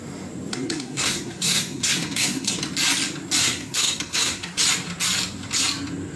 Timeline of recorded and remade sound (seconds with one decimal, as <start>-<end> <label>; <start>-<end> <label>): 0.0-0.5 recorded; 0.5-2.6 remade; 2.6-3.4 recorded; 3.4-4.6 remade; 4.6-6.2 recorded